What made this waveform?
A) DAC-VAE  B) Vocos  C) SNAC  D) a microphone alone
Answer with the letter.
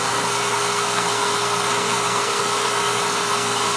C